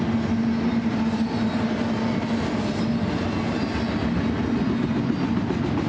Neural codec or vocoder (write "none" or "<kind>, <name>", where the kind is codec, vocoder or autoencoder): none